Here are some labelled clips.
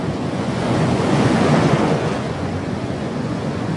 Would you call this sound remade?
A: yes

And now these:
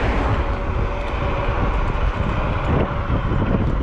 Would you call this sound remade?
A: no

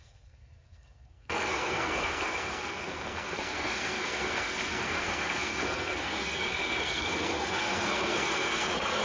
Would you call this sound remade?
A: yes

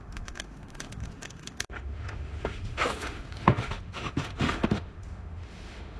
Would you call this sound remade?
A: yes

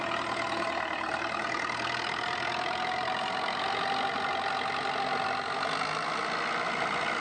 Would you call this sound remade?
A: no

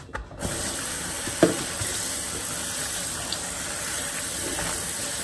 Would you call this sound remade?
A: no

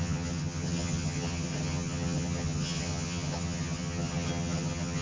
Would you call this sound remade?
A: yes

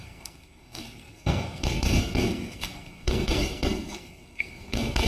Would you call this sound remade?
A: yes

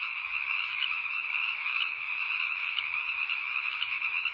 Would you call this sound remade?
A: yes